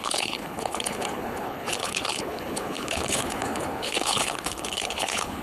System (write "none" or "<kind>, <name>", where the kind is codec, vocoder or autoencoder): codec, HILCodec